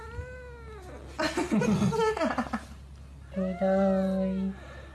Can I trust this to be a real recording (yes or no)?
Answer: yes